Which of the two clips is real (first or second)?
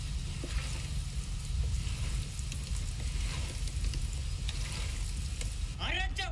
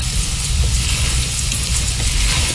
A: first